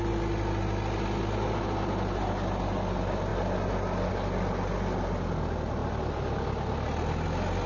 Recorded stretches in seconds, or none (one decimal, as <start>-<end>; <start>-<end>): 0.0-7.7